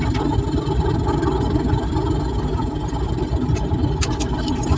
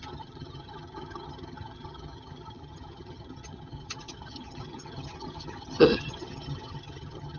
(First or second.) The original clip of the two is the first